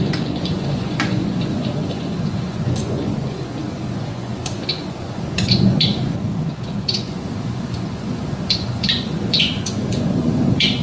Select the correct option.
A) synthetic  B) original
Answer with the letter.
A